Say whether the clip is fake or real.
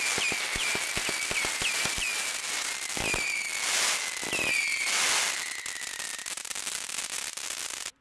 real